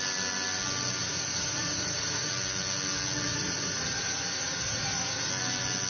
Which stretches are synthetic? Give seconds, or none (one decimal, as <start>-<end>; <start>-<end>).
1.0-2.3; 3.3-5.3

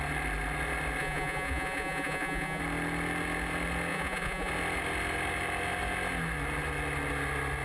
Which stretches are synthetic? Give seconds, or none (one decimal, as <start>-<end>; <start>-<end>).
1.0-2.6; 3.9-4.5